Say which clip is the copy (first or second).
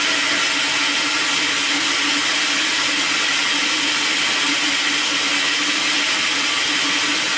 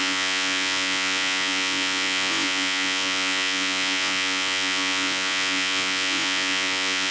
second